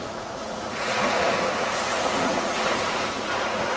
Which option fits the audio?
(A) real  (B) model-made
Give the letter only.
B